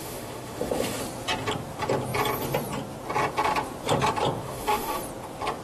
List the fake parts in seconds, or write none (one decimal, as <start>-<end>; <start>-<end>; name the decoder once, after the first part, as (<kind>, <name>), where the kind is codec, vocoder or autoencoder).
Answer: 0.0-1.0 (autoencoder, DAC-VAE); 4.4-5.0